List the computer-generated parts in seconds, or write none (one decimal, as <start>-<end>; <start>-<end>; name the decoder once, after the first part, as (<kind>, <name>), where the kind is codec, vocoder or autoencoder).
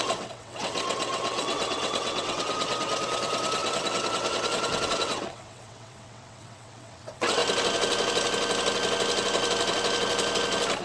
0.0-7.4 (vocoder, WaveNeXt)